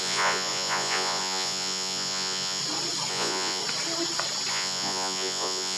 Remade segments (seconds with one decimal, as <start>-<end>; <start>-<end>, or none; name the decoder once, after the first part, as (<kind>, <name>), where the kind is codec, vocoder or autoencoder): 0.0-2.6 (vocoder, Vocos); 3.1-3.6; 4.5-5.8

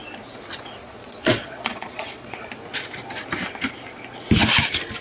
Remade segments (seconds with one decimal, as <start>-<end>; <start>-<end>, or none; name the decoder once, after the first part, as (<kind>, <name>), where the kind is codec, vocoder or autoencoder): 0.8-2.5 (vocoder, Vocos)

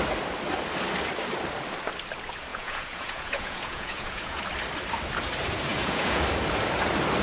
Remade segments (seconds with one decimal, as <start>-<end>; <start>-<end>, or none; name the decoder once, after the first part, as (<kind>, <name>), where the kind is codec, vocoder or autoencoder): 2.5-4.4 (vocoder, Vocos); 5.7-6.2

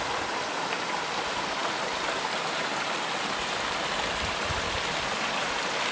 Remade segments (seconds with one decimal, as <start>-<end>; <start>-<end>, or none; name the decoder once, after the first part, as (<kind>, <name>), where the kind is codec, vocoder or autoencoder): none